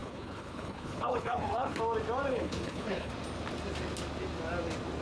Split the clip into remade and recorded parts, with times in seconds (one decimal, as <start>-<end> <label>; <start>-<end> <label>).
0.0-1.8 remade; 1.8-2.3 recorded; 2.3-3.1 remade; 3.1-5.0 recorded